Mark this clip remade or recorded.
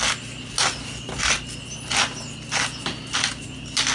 recorded